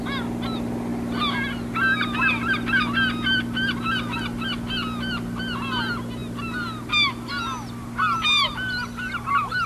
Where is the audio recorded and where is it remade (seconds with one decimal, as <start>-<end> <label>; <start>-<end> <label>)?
0.0-9.7 recorded